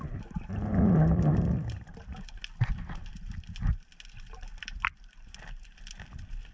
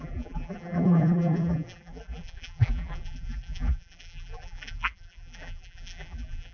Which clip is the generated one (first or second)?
second